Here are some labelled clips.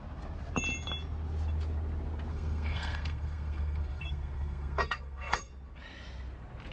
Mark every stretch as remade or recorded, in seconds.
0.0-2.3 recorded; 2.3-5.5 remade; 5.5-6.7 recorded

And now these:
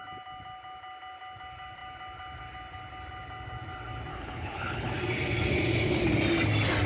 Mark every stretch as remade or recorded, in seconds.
0.0-4.1 recorded; 4.1-4.9 remade; 4.9-6.9 recorded

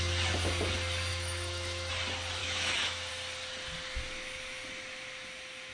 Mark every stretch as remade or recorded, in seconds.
0.0-1.1 recorded; 1.1-1.9 remade; 1.9-2.4 recorded; 2.4-3.1 remade; 3.1-5.7 recorded

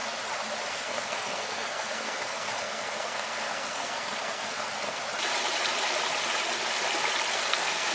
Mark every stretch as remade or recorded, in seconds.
0.0-0.7 recorded; 0.7-5.0 remade; 5.0-7.3 recorded; 7.3-7.9 remade

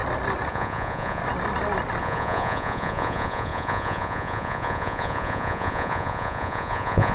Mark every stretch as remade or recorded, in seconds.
0.0-0.5 recorded; 0.5-1.2 remade; 1.2-2.0 recorded; 2.0-7.1 remade

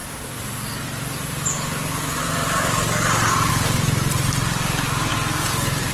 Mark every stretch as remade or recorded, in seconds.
0.0-5.1 remade; 5.1-5.9 recorded

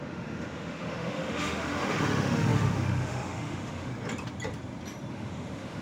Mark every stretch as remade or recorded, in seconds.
0.0-3.9 remade; 3.9-5.1 recorded; 5.1-5.8 remade